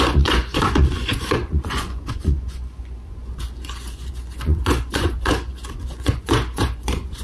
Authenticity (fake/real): fake